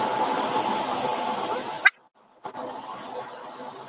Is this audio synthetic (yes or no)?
no